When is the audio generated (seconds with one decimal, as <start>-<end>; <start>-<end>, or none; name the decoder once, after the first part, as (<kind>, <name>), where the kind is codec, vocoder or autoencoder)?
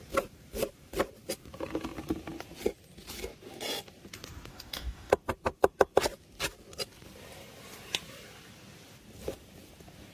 4.5-5.1 (codec, DAC)